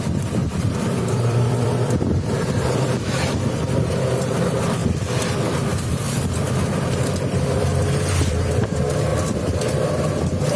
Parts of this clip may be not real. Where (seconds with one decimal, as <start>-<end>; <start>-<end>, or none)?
0.0-4.8; 7.1-10.6